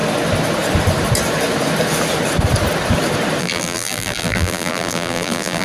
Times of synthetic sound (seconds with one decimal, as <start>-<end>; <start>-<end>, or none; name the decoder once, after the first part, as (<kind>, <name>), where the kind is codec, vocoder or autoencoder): 3.4-5.6 (vocoder, BigVGAN v2)